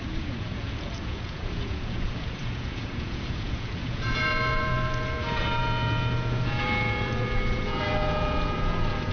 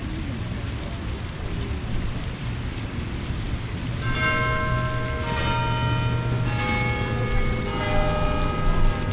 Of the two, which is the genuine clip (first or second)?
second